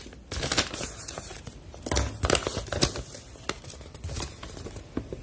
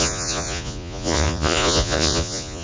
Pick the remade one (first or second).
second